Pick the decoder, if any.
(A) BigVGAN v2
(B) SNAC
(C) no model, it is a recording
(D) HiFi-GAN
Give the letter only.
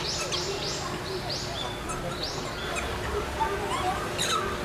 C